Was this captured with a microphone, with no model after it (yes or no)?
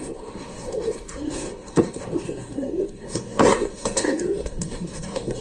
no